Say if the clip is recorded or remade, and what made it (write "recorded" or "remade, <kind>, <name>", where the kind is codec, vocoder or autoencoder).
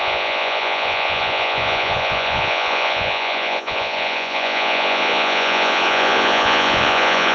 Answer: remade, vocoder, Vocos